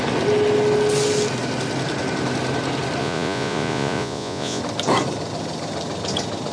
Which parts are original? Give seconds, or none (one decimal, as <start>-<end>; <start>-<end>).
0.0-3.0; 4.6-6.5